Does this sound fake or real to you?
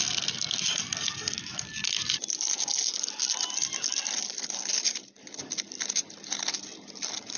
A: real